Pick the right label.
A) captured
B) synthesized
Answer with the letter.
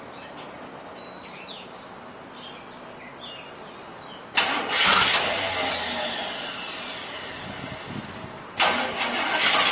A